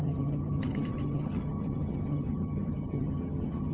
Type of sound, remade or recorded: remade